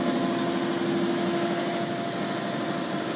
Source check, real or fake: real